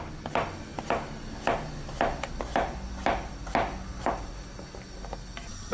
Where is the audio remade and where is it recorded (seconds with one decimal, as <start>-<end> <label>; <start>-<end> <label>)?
0.0-5.7 recorded